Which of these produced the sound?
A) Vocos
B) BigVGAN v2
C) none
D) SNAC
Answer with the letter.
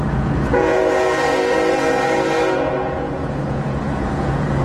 A